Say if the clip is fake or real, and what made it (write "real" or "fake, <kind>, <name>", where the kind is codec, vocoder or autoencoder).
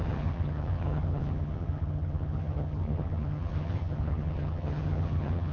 fake, vocoder, HiFi-GAN